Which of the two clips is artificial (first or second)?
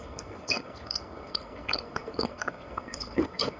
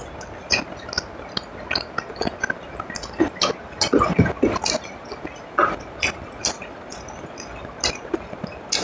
first